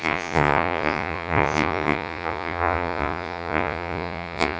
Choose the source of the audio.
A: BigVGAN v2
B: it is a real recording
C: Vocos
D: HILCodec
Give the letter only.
C